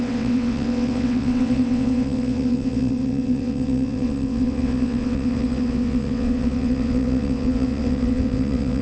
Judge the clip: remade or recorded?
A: remade